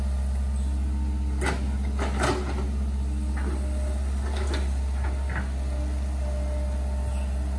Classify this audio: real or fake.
real